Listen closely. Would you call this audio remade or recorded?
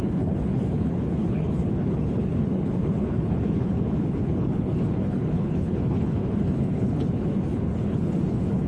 remade